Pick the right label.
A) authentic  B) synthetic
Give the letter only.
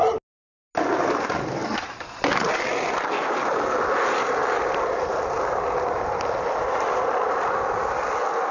A